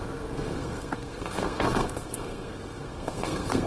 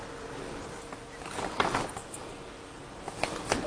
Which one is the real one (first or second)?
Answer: second